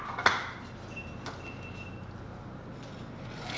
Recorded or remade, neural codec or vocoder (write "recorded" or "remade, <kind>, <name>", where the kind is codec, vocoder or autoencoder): recorded